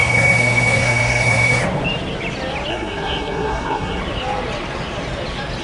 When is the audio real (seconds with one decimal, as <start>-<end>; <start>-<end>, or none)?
1.6-2.7; 4.0-5.6